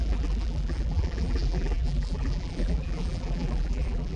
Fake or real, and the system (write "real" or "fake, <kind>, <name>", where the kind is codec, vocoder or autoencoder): fake, vocoder, BigVGAN v2